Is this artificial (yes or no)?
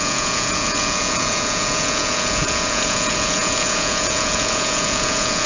yes